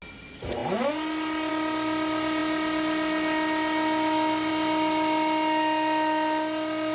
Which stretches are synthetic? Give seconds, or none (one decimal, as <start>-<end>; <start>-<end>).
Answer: none